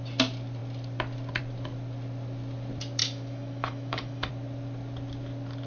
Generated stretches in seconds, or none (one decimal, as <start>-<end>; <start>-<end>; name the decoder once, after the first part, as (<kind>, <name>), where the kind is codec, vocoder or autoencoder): 3.0-4.3 (autoencoder, DAC-VAE)